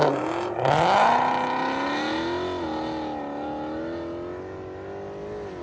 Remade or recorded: recorded